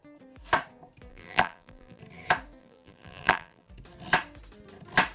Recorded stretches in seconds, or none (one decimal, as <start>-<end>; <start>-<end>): 0.0-1.1; 2.0-2.6; 3.7-5.1